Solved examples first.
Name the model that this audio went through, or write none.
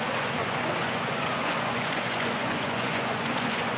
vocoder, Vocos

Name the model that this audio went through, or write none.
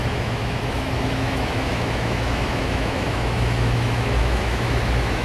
autoencoder, DAC-VAE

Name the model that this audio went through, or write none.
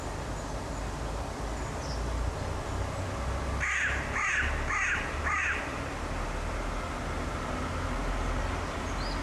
none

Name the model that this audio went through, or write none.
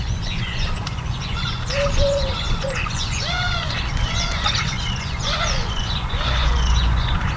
vocoder, Vocos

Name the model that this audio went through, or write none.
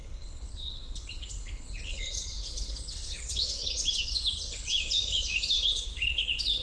codec, HILCodec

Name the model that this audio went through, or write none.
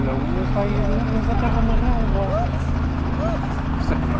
none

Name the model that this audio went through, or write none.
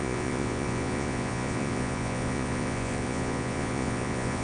vocoder, Vocos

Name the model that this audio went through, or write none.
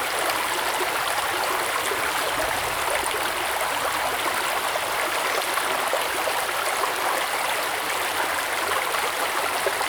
none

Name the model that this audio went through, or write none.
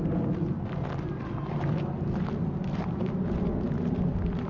none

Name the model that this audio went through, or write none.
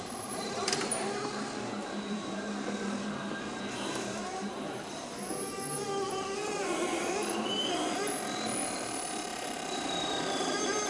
vocoder, BigVGAN v2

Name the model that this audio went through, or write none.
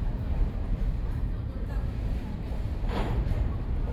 vocoder, BigVGAN v2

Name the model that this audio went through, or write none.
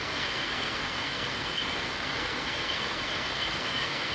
codec, SNAC